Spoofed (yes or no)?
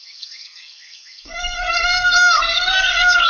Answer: yes